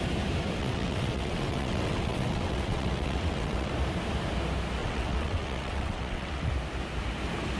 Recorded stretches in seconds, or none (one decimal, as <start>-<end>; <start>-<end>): 0.0-0.6; 3.7-4.8; 6.5-7.6